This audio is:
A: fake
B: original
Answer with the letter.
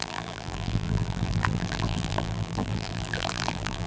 A